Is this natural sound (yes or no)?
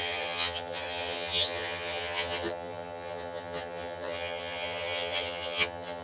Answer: no